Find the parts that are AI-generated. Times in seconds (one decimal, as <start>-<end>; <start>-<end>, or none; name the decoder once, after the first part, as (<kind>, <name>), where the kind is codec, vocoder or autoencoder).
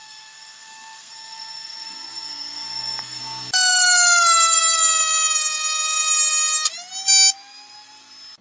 0.0-3.2 (codec, SNAC)